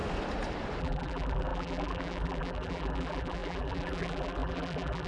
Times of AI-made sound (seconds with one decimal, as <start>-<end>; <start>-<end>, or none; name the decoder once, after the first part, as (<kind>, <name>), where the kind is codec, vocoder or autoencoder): 0.8-5.1 (vocoder, BigVGAN v2)